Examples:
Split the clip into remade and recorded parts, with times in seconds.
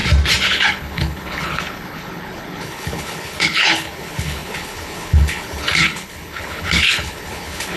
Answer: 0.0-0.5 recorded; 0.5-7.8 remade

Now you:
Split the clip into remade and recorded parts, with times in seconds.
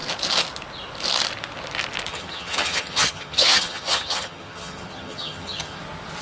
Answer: 0.0-2.1 recorded; 2.1-5.8 remade; 5.8-6.2 recorded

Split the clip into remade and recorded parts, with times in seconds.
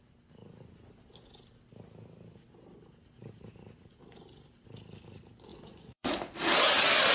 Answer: 0.0-5.5 recorded; 5.5-6.1 remade; 6.1-7.1 recorded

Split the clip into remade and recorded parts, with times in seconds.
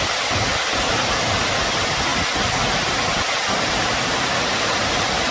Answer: 0.0-5.3 recorded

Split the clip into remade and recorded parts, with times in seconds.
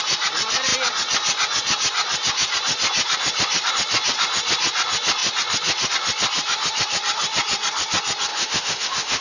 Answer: 0.0-8.3 recorded; 8.3-9.2 remade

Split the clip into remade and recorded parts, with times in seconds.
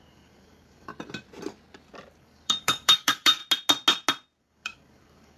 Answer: 0.0-0.9 remade; 0.9-2.2 recorded; 2.2-3.4 remade; 3.4-4.4 recorded; 4.4-5.4 remade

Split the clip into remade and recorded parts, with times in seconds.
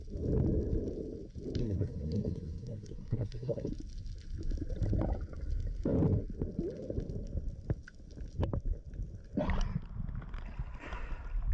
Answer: 0.0-1.6 recorded; 1.6-3.7 remade; 3.7-11.5 recorded